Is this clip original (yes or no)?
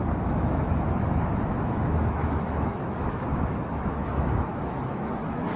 no